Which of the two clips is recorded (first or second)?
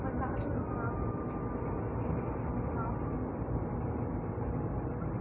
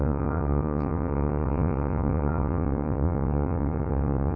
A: first